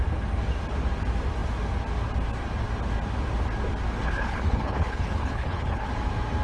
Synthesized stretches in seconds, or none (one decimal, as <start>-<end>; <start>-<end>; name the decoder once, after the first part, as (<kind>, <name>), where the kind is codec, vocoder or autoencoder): 4.0-5.9 (codec, HILCodec)